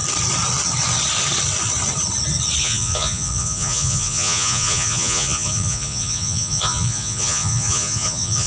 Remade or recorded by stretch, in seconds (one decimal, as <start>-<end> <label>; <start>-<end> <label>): 0.0-2.6 recorded; 2.6-8.5 remade